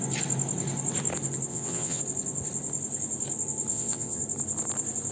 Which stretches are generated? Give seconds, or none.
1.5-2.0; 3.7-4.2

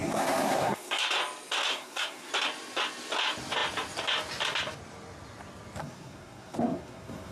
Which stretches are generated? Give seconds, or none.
0.0-1.0; 1.7-2.3; 5.8-7.3

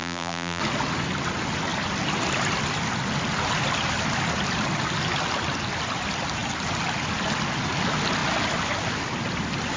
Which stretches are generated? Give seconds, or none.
0.0-0.6